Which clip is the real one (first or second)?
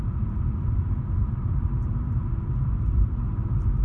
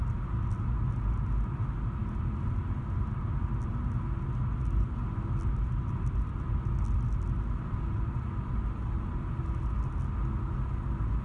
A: second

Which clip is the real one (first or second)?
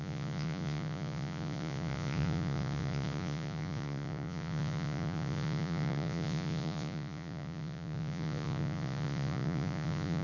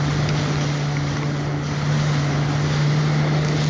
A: second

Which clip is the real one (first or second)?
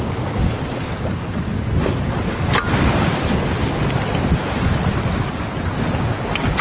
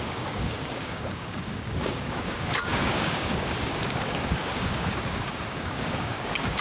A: first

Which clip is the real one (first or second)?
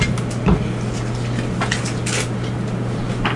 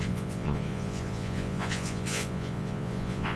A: first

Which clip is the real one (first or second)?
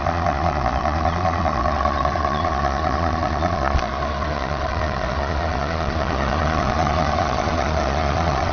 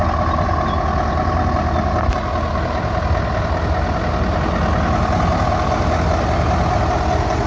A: second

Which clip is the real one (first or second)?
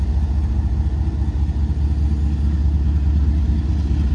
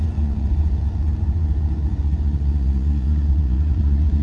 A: first